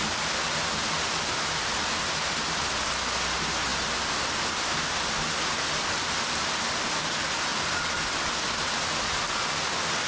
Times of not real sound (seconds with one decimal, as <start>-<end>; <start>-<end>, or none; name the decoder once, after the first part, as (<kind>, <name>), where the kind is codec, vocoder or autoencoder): none

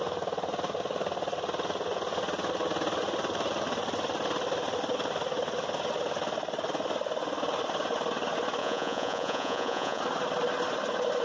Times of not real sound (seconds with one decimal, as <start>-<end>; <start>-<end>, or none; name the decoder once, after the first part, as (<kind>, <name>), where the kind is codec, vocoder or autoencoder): 8.6-10.0 (vocoder, Vocos)